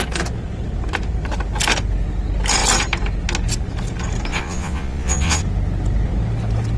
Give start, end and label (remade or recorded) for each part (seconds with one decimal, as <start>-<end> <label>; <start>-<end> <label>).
0.0-4.3 recorded; 4.3-5.4 remade; 5.4-6.8 recorded

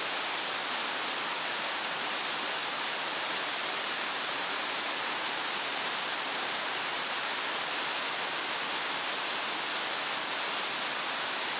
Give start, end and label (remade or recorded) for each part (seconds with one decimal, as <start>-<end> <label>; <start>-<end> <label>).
0.0-2.6 recorded; 2.6-5.4 remade; 5.4-11.6 recorded